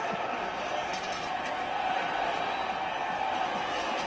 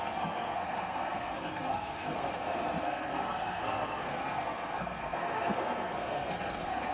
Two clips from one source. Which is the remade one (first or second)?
second